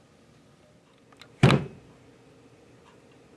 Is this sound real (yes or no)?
yes